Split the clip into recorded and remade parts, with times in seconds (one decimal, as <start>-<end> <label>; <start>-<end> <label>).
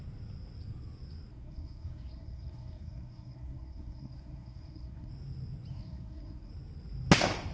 0.0-1.3 recorded; 1.3-5.1 remade; 5.1-5.7 recorded; 5.7-6.5 remade; 6.5-7.5 recorded